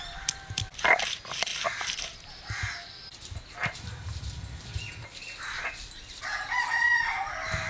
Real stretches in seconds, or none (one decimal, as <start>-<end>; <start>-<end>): 0.0-7.7